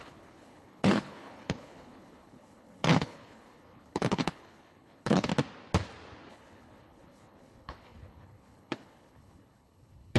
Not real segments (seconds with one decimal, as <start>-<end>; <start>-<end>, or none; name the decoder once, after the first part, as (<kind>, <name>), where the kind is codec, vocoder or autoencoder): 0.0-5.3 (codec, HILCodec); 6.3-10.2